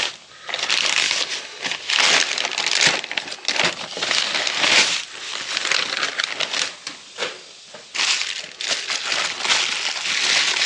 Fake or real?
real